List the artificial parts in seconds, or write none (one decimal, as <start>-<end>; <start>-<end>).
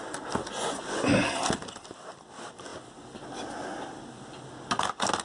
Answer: 0.4-1.4